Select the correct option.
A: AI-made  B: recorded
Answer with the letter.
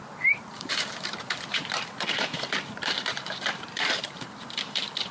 A